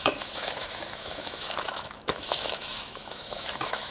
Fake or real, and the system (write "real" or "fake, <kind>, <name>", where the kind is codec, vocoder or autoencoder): fake, autoencoder, DAC-VAE